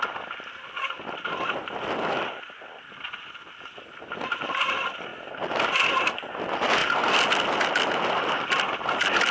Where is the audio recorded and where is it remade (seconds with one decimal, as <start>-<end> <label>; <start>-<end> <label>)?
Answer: 0.0-9.3 recorded